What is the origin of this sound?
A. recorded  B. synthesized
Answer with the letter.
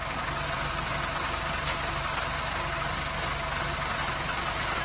A